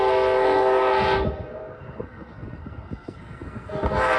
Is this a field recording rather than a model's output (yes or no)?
no